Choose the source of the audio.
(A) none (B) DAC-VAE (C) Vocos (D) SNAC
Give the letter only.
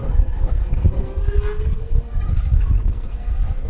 D